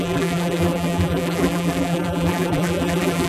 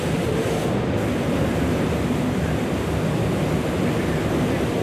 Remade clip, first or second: first